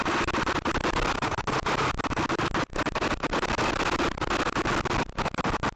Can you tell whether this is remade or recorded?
recorded